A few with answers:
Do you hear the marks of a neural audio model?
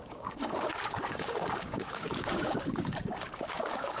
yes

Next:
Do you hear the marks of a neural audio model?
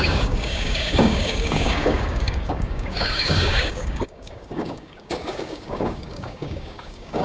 yes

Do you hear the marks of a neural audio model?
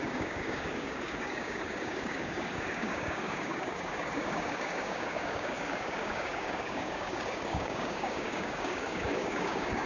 yes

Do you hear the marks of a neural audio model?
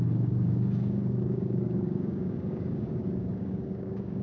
yes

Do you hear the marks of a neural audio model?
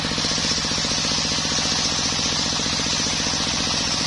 no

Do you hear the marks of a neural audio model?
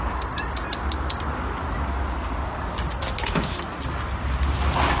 no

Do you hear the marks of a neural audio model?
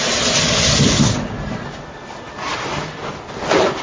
no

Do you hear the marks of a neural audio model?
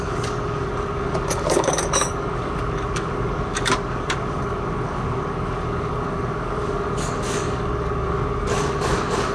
yes